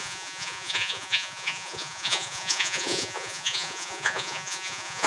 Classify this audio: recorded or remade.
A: remade